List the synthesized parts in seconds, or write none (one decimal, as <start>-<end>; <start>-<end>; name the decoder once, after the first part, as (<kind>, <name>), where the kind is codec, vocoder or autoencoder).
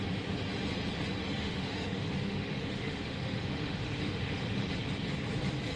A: 1.2-4.7 (autoencoder, DAC-VAE)